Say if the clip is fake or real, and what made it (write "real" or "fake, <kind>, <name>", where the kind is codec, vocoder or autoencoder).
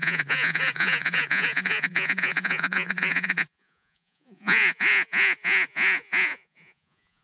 fake, vocoder, Vocos